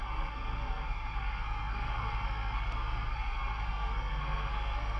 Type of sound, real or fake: fake